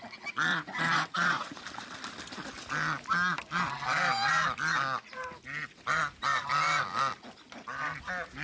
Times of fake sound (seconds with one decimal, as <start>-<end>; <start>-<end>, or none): 0.5-1.6